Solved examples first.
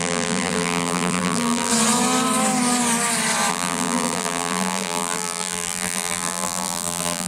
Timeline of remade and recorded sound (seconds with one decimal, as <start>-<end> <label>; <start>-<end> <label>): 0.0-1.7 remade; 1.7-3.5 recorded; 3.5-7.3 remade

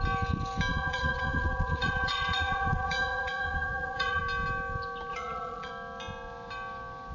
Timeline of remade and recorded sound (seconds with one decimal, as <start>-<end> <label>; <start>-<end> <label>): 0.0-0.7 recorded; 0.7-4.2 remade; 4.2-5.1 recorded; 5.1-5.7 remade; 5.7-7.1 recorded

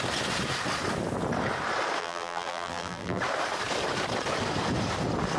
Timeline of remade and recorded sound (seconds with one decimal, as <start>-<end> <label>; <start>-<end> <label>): 0.0-2.0 recorded; 2.0-3.2 remade; 3.2-5.4 recorded

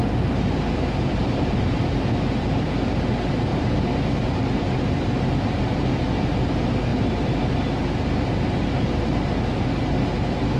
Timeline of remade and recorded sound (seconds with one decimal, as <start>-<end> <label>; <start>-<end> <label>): 0.0-1.1 recorded; 1.1-1.8 remade; 1.8-3.5 recorded; 3.5-5.7 remade; 5.7-10.6 recorded

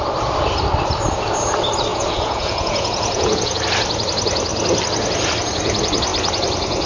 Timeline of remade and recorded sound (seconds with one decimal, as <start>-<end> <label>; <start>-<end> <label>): 0.0-1.9 recorded; 1.9-3.6 remade; 3.6-6.9 recorded

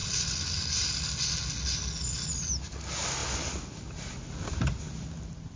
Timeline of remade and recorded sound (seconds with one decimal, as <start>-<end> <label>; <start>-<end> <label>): 0.0-5.6 recorded

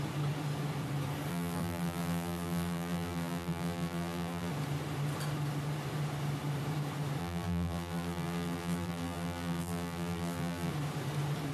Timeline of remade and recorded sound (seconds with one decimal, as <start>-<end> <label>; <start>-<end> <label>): 0.0-1.3 recorded; 1.3-4.5 remade; 4.5-7.2 recorded; 7.2-10.7 remade; 10.7-11.5 recorded